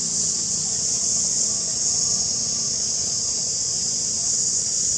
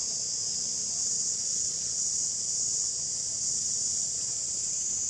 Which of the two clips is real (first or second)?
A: second